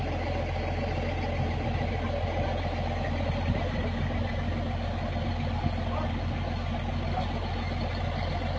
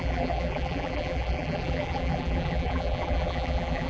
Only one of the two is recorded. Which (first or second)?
first